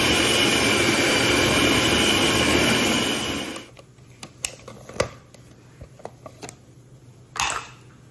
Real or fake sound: real